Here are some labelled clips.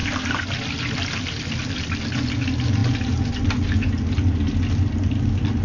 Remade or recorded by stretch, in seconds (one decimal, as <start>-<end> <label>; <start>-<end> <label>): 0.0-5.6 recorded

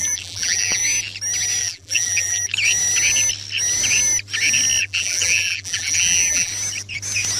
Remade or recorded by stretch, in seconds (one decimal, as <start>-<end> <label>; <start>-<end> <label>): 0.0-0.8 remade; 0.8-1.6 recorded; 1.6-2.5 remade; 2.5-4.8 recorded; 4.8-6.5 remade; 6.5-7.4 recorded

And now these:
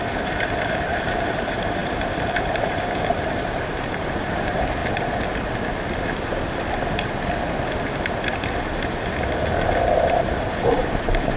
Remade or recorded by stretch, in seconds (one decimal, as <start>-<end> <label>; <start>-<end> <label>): 0.0-4.8 remade; 4.8-9.7 recorded; 9.7-11.4 remade

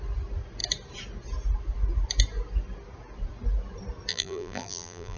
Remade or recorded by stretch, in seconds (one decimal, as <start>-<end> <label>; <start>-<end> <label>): 0.0-4.1 recorded; 4.1-5.2 remade

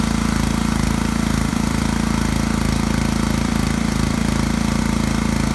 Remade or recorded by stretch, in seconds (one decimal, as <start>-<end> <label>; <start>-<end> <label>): 0.0-1.5 recorded; 1.5-4.8 remade; 4.8-5.5 recorded

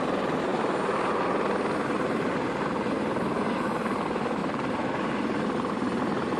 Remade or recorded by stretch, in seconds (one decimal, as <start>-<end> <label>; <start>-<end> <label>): 0.0-0.5 remade; 0.5-3.5 recorded; 3.5-6.4 remade

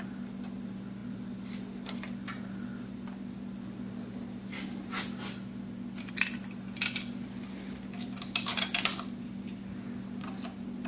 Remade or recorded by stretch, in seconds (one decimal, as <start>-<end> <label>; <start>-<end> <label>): 0.0-10.9 recorded

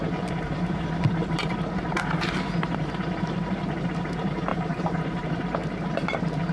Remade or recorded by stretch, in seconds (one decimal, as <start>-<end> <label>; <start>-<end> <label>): 0.0-6.5 remade